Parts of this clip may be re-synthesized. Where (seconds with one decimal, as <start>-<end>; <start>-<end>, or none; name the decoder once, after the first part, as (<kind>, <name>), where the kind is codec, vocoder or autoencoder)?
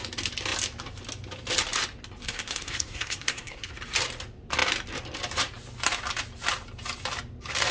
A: 2.2-3.7 (codec, SNAC)